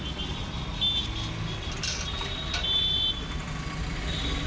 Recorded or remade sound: recorded